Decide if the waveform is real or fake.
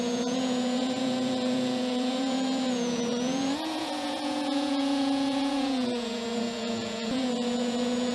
fake